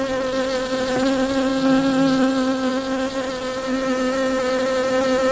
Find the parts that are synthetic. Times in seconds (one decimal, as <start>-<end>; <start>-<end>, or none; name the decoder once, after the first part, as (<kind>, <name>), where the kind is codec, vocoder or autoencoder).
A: none